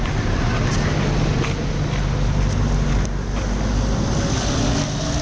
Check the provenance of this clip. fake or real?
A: real